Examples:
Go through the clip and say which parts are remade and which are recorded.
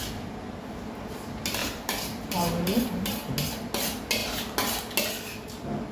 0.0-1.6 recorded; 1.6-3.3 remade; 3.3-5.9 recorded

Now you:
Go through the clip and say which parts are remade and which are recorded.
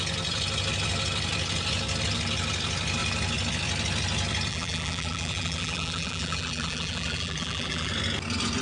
0.0-4.5 recorded; 4.5-7.9 remade; 7.9-8.6 recorded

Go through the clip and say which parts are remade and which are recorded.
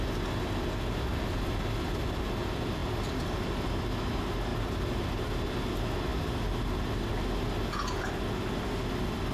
0.0-4.5 recorded; 4.5-5.4 remade; 5.4-9.3 recorded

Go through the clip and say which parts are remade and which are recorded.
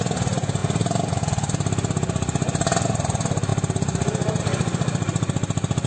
0.0-5.9 recorded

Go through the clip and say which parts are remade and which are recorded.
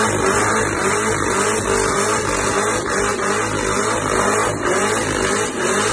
0.0-5.9 recorded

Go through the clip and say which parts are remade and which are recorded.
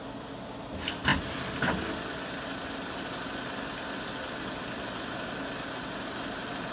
0.0-6.7 recorded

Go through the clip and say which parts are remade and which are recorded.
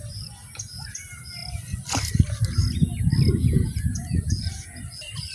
0.0-1.4 remade; 1.4-2.1 recorded; 2.1-2.6 remade; 2.6-3.9 recorded; 3.9-5.3 remade